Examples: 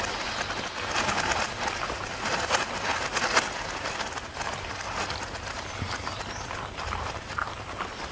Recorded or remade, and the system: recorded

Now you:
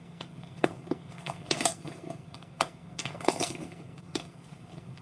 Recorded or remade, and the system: remade, codec, SNAC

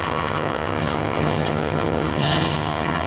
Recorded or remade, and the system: remade, vocoder, HiFi-GAN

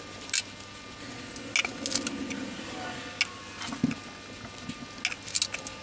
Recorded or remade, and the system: recorded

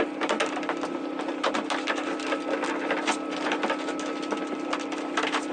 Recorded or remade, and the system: recorded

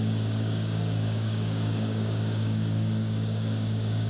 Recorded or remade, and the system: remade, codec, DAC